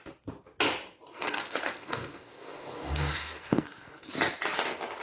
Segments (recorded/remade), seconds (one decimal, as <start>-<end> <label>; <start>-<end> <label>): 0.0-1.1 recorded; 1.1-4.1 remade; 4.1-5.0 recorded